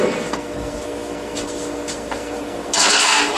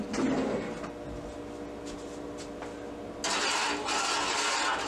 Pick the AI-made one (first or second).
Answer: first